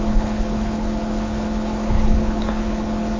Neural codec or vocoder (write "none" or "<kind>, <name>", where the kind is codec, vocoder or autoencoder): codec, HILCodec